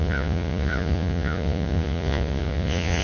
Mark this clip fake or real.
fake